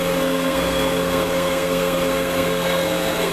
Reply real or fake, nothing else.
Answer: fake